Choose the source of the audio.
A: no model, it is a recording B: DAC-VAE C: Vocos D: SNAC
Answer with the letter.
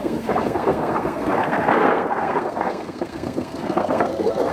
D